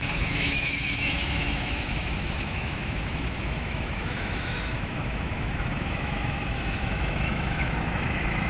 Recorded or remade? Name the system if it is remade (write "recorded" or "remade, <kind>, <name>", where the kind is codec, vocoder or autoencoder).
remade, autoencoder, DAC-VAE